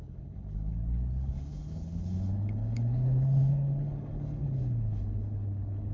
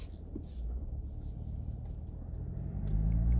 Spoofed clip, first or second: first